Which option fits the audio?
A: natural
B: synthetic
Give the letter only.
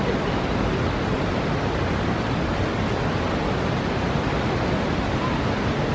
A